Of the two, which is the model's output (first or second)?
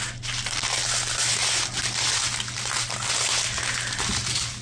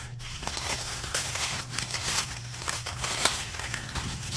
second